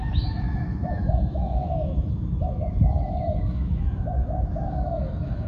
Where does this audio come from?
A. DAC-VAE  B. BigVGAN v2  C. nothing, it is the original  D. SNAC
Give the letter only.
A